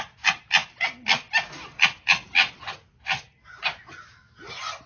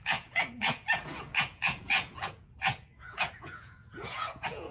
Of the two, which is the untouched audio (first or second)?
first